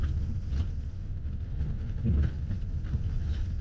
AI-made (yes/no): no